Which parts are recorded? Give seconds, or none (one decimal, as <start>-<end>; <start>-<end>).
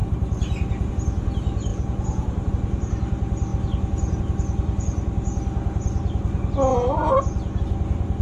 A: 0.0-1.7; 2.5-8.2